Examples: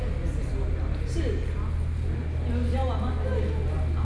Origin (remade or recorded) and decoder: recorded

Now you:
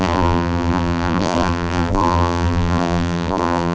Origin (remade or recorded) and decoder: remade, vocoder, BigVGAN v2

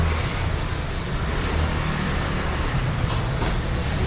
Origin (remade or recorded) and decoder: recorded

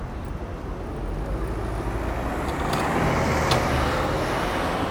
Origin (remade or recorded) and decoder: recorded